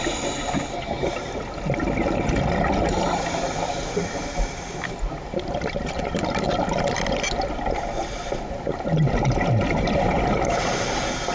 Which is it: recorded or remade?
recorded